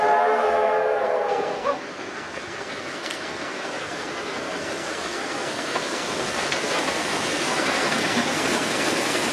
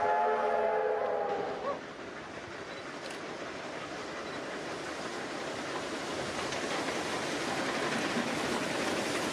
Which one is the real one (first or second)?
second